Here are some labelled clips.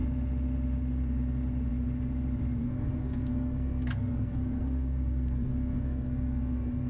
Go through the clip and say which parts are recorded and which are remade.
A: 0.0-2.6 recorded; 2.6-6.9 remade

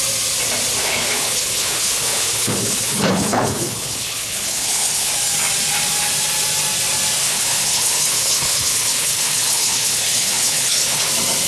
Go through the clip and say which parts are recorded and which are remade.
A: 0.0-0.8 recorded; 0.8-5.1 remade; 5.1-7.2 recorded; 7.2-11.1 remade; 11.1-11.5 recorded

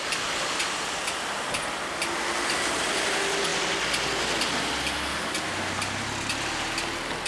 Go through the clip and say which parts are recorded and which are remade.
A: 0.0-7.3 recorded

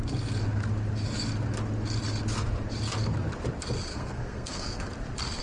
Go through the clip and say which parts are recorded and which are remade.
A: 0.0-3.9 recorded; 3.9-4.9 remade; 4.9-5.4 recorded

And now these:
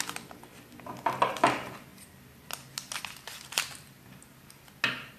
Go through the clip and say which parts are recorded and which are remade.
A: 0.0-5.2 recorded

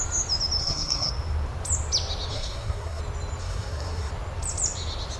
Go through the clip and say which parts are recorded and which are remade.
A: 0.0-0.6 recorded; 0.6-1.1 remade; 1.1-2.3 recorded; 2.3-3.0 remade; 3.0-3.4 recorded; 3.4-4.1 remade; 4.1-5.2 recorded

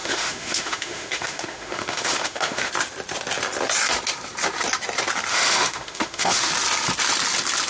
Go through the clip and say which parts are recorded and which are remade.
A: 0.0-2.7 remade; 2.7-5.3 recorded; 5.3-6.5 remade; 6.5-7.7 recorded